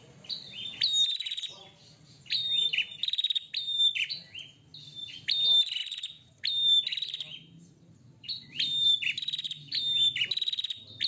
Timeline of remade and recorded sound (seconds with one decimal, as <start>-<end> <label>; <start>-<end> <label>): 0.0-11.1 recorded